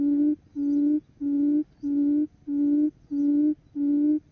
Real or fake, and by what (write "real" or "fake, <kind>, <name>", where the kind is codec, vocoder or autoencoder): real